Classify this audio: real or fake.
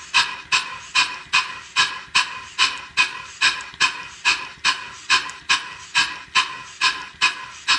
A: real